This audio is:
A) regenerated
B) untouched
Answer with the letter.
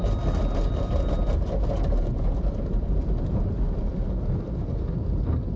B